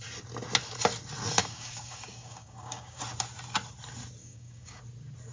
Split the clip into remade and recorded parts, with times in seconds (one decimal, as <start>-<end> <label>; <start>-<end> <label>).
0.0-1.4 recorded; 1.4-3.0 remade; 3.0-4.2 recorded; 4.2-4.8 remade; 4.8-5.3 recorded